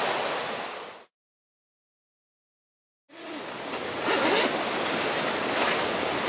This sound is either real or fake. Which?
real